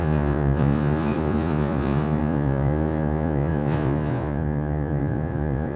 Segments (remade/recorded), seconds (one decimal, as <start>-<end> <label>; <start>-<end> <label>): 0.0-5.8 remade